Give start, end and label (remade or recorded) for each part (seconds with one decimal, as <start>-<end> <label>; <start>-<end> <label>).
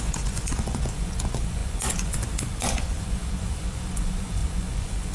0.0-5.1 remade